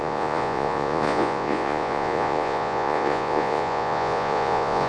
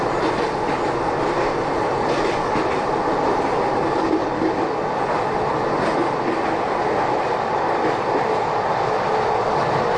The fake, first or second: first